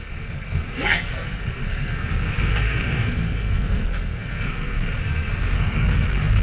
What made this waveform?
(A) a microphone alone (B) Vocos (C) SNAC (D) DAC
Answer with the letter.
C